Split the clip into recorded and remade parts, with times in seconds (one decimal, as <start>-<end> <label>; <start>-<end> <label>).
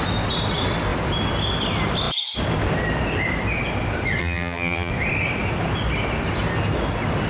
0.0-4.2 recorded; 4.2-4.9 remade; 4.9-7.3 recorded